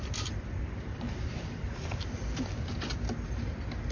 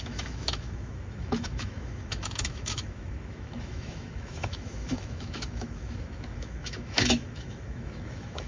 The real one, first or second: first